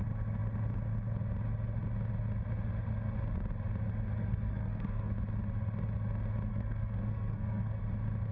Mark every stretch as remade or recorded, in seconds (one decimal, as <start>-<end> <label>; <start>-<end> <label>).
0.0-4.2 recorded; 4.2-5.1 remade; 5.1-6.5 recorded; 6.5-7.8 remade; 7.8-8.3 recorded